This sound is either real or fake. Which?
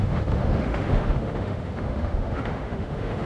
fake